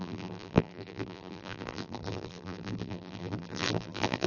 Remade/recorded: remade